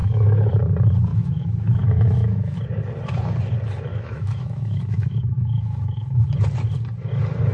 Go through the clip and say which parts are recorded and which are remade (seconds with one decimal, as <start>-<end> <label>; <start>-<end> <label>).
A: 0.0-0.5 remade; 0.5-1.1 recorded; 1.1-2.6 remade; 2.6-3.9 recorded; 3.9-6.3 remade; 6.3-7.5 recorded